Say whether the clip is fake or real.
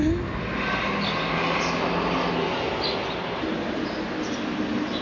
real